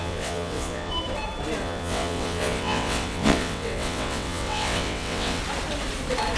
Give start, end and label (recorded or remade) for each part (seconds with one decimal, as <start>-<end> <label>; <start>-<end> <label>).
0.0-0.9 remade; 0.9-1.6 recorded; 1.6-5.4 remade; 5.4-6.4 recorded